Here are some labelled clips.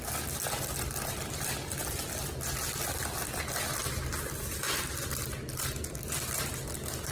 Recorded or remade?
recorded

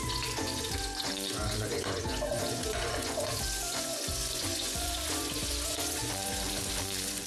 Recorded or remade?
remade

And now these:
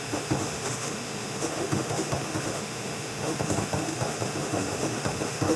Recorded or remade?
remade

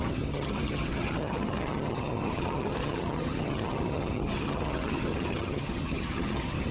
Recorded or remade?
remade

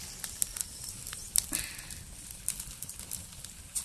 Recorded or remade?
recorded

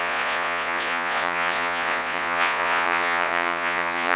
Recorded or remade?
remade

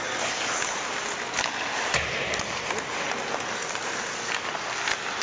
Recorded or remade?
recorded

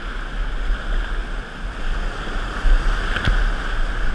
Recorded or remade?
recorded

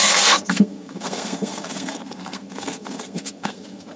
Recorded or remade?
remade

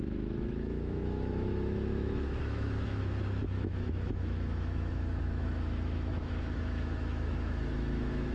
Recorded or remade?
remade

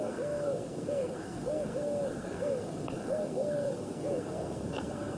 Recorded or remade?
remade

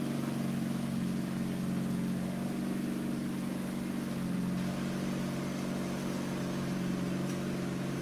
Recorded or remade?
remade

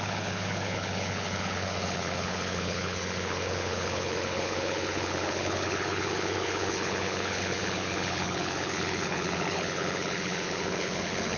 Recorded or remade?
remade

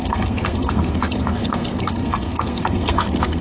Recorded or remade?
remade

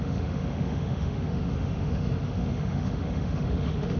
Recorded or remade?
remade